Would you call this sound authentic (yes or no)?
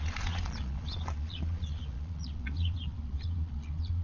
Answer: no